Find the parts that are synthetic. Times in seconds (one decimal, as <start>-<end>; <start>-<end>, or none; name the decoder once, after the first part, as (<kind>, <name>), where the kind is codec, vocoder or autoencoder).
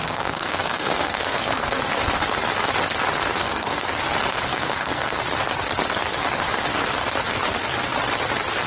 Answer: 0.0-1.8 (codec, SNAC); 3.4-4.0; 4.5-5.2